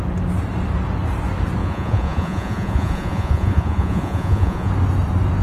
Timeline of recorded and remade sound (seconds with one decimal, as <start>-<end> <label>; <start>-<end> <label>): 0.0-1.6 recorded; 1.6-4.7 remade; 4.7-5.4 recorded